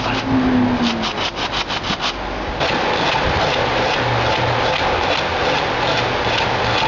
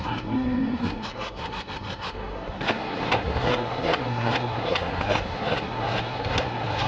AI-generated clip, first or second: second